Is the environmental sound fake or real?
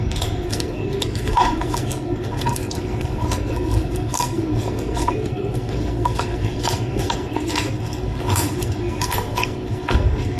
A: fake